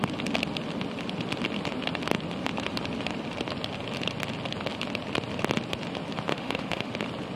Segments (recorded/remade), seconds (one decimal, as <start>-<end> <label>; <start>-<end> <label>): 0.0-6.3 recorded; 6.3-6.9 remade; 6.9-7.4 recorded